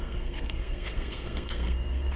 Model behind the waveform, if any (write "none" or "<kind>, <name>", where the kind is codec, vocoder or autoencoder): codec, SNAC